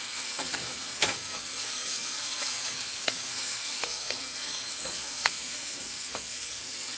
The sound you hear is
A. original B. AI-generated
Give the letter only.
B